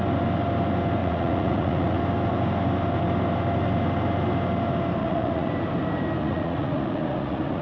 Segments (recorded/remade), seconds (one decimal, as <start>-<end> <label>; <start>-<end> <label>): 0.0-1.0 recorded; 1.0-2.0 remade; 2.0-5.0 recorded; 5.0-5.5 remade; 5.5-6.2 recorded; 6.2-7.6 remade